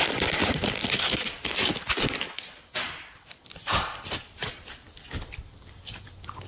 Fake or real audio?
fake